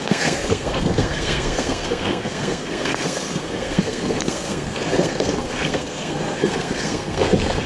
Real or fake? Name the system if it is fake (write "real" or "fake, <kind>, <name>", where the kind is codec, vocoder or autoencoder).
fake, codec, SNAC